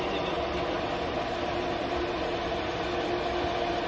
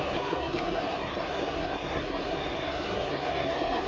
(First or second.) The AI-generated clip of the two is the second